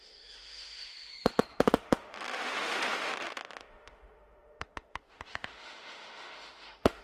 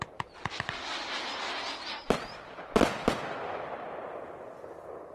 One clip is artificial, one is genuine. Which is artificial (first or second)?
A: first